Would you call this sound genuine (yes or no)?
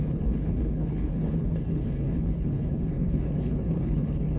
no